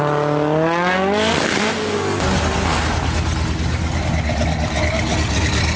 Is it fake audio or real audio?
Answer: real